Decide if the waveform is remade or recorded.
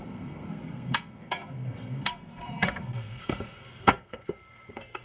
remade